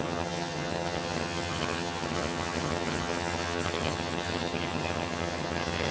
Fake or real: fake